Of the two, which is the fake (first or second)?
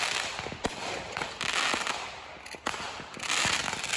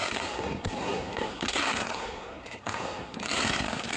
second